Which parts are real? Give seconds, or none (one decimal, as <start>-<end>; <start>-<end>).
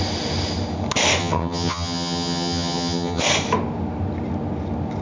0.0-1.2; 3.2-5.0